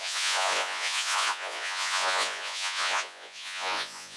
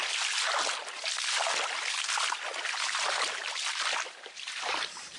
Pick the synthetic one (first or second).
first